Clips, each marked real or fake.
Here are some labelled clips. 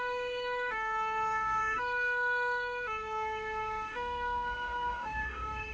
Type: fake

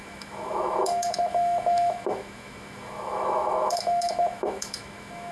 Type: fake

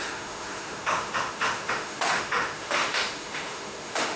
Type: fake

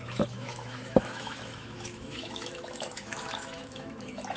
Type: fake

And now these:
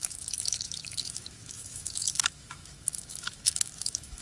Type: fake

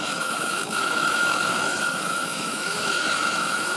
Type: fake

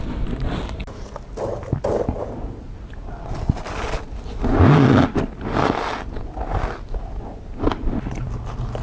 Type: real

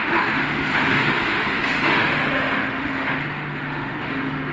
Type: fake